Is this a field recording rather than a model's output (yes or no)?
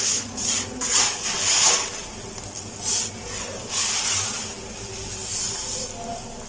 yes